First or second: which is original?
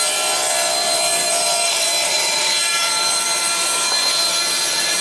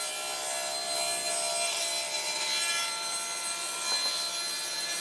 second